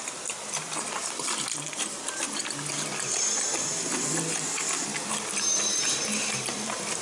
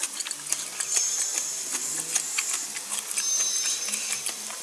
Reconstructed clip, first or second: first